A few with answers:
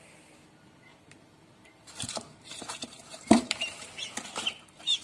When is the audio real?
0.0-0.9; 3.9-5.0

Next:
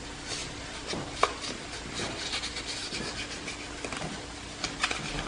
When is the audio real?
0.0-5.3

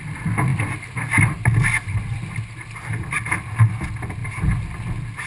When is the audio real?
0.0-5.3